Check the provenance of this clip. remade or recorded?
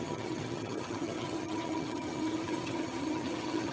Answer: remade